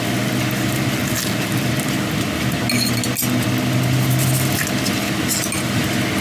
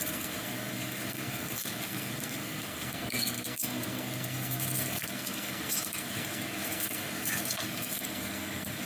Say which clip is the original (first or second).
first